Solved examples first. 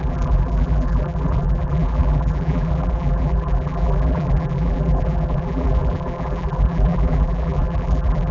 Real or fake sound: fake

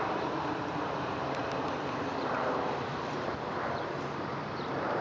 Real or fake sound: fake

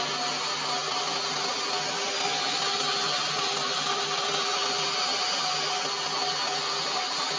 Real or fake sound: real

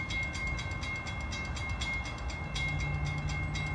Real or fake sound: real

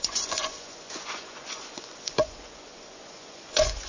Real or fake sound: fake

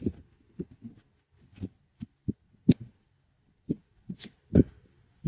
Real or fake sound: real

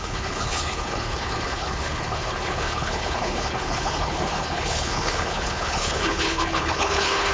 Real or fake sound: fake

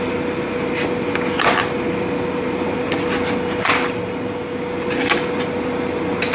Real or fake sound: real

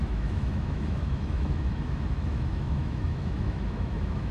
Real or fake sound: fake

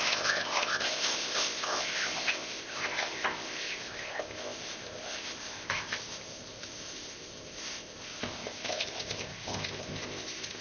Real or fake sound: fake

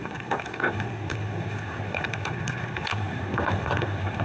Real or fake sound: fake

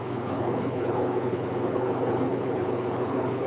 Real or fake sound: fake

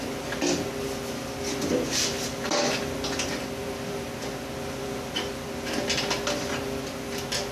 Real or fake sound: real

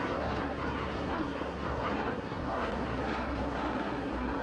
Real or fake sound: fake